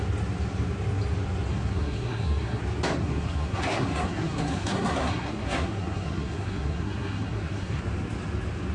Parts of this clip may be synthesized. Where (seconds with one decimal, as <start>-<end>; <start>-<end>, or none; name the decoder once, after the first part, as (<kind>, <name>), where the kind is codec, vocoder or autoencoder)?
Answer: 1.5-2.6 (codec, SNAC); 3.0-7.8